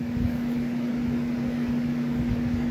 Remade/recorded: remade